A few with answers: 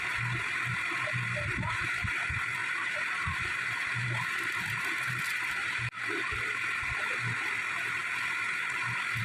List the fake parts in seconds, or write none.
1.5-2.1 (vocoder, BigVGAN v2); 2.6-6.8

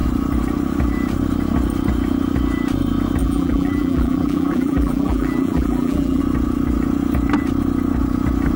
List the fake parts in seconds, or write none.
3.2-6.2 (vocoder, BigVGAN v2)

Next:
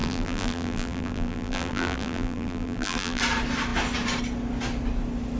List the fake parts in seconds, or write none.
0.0-3.2 (vocoder, BigVGAN v2)